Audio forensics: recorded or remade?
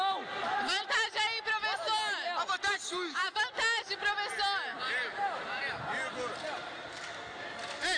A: recorded